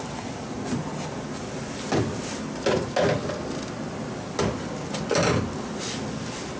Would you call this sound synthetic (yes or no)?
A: no